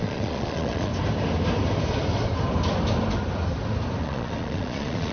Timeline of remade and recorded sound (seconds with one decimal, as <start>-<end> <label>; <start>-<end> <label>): 0.0-0.9 remade; 0.9-4.0 recorded; 4.0-5.1 remade